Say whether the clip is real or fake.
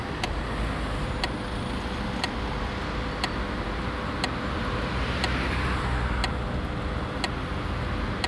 real